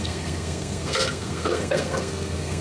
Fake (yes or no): yes